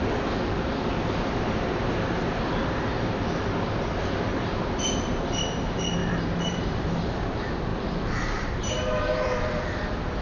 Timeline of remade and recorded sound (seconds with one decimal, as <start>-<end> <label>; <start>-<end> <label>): 0.0-6.0 recorded; 6.0-7.0 remade; 7.0-7.7 recorded; 7.7-9.6 remade; 9.6-10.2 recorded